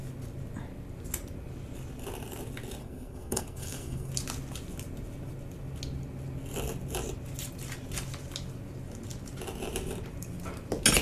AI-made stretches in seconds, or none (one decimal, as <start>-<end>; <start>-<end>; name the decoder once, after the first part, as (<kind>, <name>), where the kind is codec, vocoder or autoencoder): 2.8-4.1 (codec, SNAC)